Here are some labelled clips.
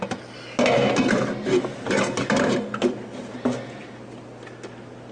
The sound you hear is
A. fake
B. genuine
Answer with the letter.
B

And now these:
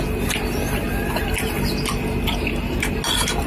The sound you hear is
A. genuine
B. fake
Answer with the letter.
A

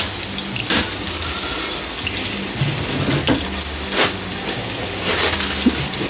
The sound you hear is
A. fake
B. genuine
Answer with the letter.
B